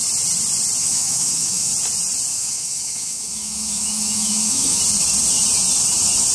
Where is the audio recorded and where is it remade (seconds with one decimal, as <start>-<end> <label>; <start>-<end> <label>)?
0.0-0.8 recorded; 0.8-1.7 remade; 1.7-2.3 recorded; 2.3-4.8 remade; 4.8-6.3 recorded